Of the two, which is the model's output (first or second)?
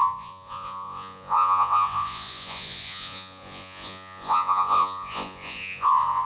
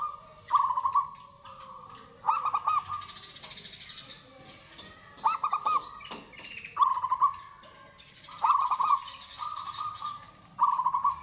first